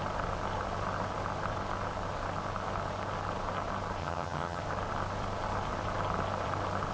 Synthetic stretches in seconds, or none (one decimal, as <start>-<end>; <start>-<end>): 4.0-4.6